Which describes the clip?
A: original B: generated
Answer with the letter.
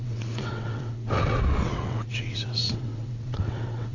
B